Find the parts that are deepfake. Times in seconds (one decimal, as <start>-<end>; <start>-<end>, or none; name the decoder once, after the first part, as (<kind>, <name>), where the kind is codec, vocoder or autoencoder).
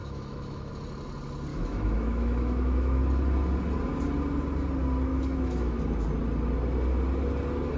0.0-0.7 (autoencoder, DAC-VAE); 1.5-3.0; 5.1-5.8